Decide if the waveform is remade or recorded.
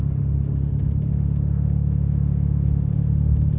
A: remade